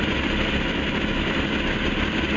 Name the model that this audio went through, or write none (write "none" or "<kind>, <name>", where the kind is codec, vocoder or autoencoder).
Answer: none